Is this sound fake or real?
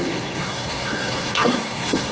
fake